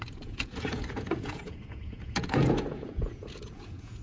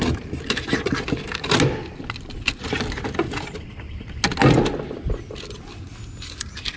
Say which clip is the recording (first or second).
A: second